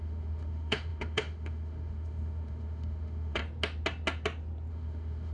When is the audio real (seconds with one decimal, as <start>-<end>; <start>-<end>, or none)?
3.4-4.7